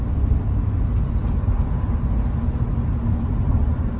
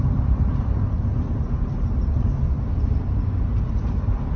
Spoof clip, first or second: second